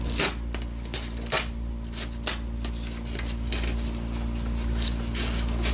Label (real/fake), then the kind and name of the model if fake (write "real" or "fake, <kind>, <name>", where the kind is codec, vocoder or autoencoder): real